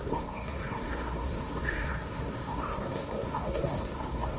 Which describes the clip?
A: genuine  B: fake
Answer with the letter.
B